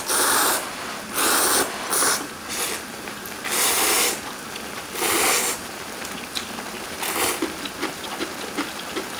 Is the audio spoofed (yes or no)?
yes